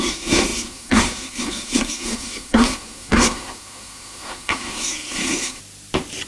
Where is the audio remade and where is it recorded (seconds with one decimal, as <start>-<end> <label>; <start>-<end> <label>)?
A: 0.0-5.6 remade; 5.6-6.3 recorded